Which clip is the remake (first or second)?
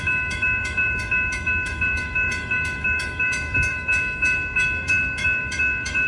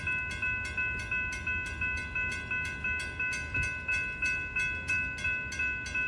first